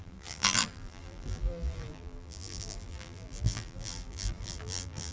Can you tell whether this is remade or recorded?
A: remade